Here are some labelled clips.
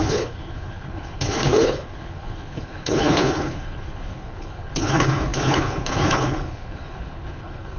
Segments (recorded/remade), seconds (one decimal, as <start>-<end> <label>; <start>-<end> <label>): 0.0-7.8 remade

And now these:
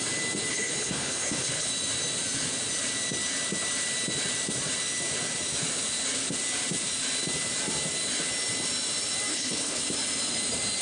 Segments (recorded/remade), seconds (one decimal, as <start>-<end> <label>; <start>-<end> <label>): 0.0-0.5 recorded; 0.5-1.7 remade; 1.7-9.3 recorded; 9.3-9.8 remade; 9.8-10.8 recorded

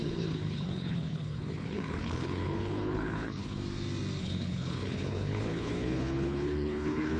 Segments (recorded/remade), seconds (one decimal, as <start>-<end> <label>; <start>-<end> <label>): 0.0-3.6 remade; 3.6-4.2 recorded; 4.2-7.2 remade

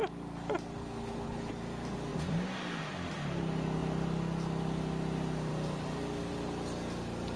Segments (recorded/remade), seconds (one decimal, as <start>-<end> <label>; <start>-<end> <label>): 0.0-0.8 recorded; 0.8-1.5 remade; 1.5-7.4 recorded

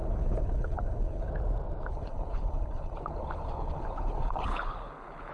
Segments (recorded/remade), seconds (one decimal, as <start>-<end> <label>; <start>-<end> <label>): 0.0-1.3 remade; 1.3-1.9 recorded; 1.9-5.3 remade

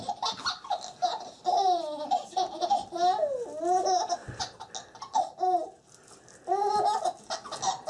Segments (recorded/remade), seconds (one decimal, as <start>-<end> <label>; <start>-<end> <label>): 0.0-7.9 recorded

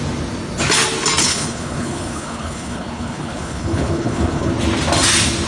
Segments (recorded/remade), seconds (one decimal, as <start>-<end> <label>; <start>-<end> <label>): 0.0-1.2 recorded; 1.2-4.5 remade; 4.5-5.5 recorded

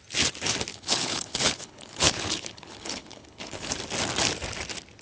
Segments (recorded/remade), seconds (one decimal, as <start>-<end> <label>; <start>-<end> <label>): 0.0-0.7 recorded; 0.7-3.7 remade; 3.7-5.0 recorded